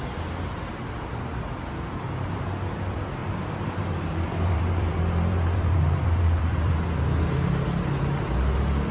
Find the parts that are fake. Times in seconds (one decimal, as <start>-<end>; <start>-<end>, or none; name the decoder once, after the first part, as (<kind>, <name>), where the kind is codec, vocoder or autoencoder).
3.2-6.7 (vocoder, BigVGAN v2)